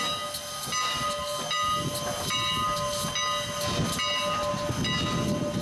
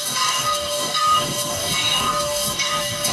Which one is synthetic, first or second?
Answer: second